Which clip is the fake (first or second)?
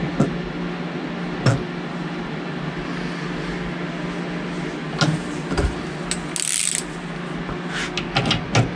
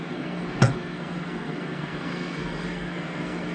second